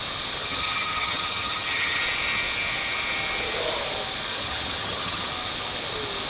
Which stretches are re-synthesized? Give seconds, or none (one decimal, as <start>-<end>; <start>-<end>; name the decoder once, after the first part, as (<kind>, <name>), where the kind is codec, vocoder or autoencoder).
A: 0.4-2.0 (vocoder, HiFi-GAN); 4.3-5.3